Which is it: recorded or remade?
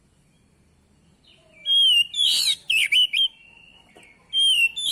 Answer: recorded